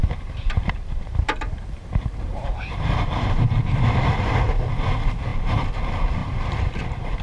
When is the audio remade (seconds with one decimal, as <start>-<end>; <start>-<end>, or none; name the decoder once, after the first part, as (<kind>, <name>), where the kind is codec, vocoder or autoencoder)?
0.0-4.3 (vocoder, BigVGAN v2); 6.2-7.2